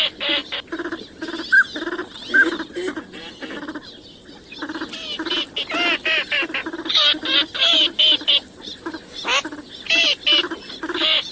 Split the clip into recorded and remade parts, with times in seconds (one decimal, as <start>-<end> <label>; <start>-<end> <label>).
0.0-11.3 recorded